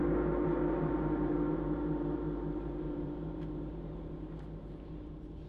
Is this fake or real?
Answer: fake